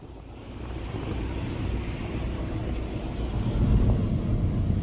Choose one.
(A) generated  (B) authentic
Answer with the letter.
A